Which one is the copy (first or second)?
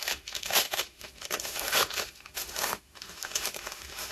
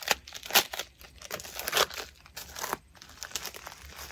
first